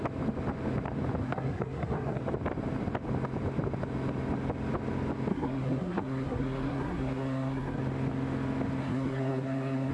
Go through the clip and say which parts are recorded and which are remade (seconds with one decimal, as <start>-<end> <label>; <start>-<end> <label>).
0.0-1.2 recorded; 1.2-2.2 remade; 2.2-5.3 recorded; 5.3-7.8 remade; 7.8-8.8 recorded; 8.8-9.9 remade